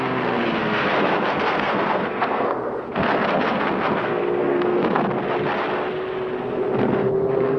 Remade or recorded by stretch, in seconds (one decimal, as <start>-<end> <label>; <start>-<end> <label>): 0.0-5.0 remade; 5.0-6.8 recorded; 6.8-7.6 remade